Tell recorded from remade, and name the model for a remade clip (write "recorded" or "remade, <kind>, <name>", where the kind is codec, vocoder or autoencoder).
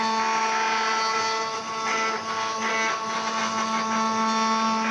recorded